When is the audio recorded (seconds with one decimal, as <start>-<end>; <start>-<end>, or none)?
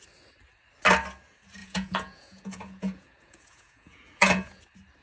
0.0-1.6; 4.6-5.0